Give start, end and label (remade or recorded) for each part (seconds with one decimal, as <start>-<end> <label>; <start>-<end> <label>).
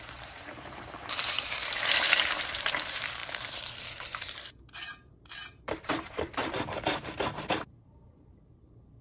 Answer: 0.0-6.4 remade; 6.4-7.4 recorded; 7.4-9.0 remade